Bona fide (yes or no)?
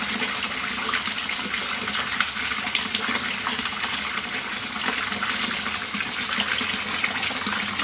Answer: yes